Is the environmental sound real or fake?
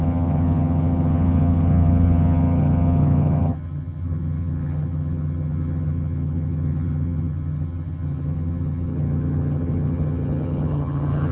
fake